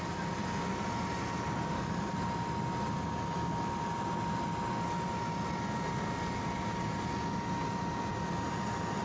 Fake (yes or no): no